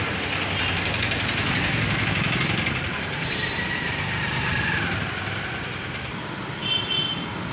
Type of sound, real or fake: real